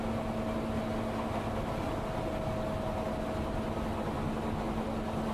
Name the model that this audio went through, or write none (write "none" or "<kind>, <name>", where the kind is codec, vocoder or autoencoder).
none